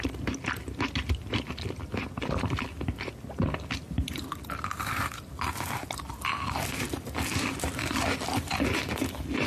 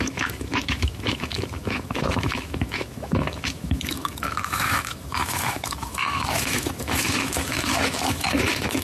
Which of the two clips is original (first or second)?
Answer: first